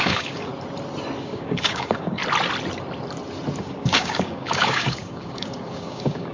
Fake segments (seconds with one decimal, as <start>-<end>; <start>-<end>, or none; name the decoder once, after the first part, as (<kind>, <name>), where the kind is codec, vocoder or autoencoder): 0.0-0.5 (codec, DAC); 1.2-2.2; 3.6-6.3